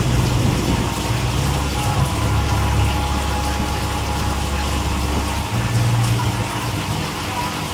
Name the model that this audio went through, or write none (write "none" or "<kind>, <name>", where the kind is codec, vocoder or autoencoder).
none